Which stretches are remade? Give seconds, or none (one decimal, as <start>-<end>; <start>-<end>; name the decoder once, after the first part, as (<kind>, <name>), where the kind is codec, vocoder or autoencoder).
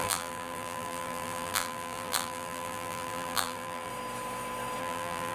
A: 0.0-3.9 (vocoder, BigVGAN v2); 4.8-5.3